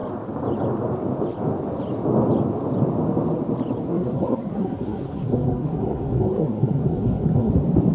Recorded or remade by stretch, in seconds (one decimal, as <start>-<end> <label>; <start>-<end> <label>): 0.0-3.9 recorded; 3.9-7.5 remade; 7.5-7.9 recorded